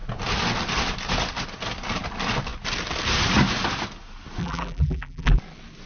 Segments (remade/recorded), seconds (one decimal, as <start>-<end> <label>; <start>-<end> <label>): 0.0-4.4 recorded; 4.4-5.4 remade; 5.4-5.9 recorded